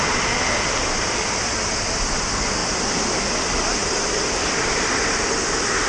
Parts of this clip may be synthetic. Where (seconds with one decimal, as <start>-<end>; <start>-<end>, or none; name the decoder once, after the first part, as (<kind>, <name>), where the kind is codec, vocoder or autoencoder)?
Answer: 2.6-3.2 (vocoder, BigVGAN v2)

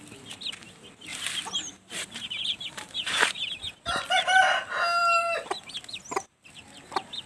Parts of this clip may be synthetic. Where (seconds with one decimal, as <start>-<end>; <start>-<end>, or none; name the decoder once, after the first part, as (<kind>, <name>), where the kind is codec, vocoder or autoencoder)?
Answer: 1.1-3.6 (vocoder, BigVGAN v2)

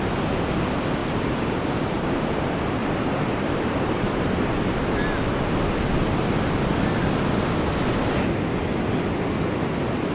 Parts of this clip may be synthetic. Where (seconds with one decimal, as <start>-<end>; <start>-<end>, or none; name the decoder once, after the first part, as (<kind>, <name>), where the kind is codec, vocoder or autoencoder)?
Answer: 1.0-1.6 (vocoder, BigVGAN v2); 2.8-4.7

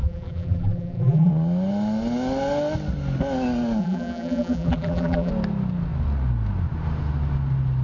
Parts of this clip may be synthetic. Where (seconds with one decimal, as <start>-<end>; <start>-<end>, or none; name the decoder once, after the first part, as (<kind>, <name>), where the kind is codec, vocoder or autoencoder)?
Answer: 0.0-1.3 (vocoder, BigVGAN v2); 3.8-5.3

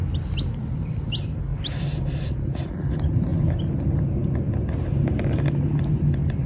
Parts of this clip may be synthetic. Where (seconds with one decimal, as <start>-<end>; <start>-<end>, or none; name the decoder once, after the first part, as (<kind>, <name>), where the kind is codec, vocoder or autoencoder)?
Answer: 0.0-3.3 (vocoder, BigVGAN v2); 5.9-6.5